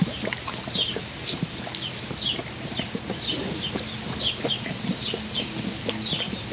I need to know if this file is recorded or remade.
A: recorded